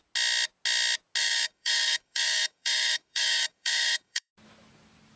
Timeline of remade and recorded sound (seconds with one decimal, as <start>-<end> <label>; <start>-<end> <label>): 0.0-1.2 recorded; 1.2-4.3 remade; 4.3-5.2 recorded